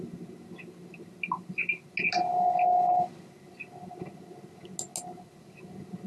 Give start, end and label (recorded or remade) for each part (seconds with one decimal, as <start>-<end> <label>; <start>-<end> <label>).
0.0-6.1 recorded